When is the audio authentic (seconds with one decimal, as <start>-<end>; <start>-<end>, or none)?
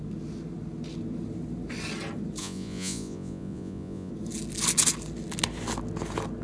0.0-2.4; 4.1-6.4